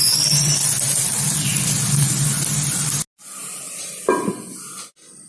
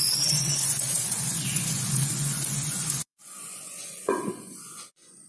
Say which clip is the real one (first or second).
first